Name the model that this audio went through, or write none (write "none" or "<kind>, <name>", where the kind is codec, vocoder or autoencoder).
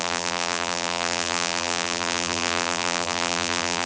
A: vocoder, BigVGAN v2